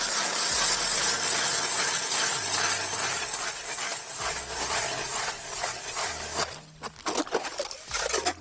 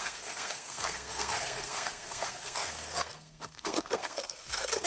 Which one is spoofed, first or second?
second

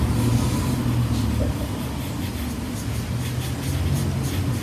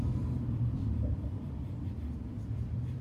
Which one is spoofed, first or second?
second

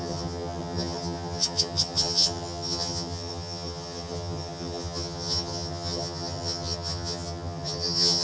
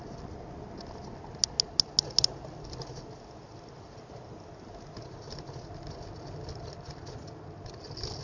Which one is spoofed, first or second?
first